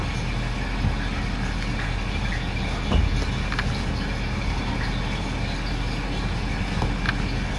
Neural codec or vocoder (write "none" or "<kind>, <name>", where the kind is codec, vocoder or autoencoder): none